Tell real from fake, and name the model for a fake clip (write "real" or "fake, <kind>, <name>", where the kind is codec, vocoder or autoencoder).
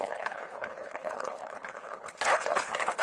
fake, codec, HILCodec